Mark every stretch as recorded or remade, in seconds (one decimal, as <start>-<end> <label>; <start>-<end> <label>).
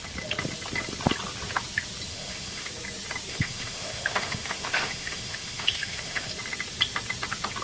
0.0-2.1 recorded; 2.1-2.7 remade; 2.7-3.3 recorded; 3.3-6.3 remade; 6.3-7.6 recorded